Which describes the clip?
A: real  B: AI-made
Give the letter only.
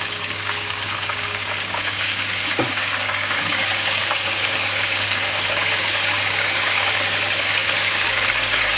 B